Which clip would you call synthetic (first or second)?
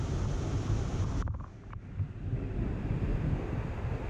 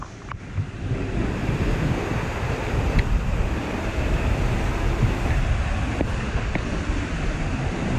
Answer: second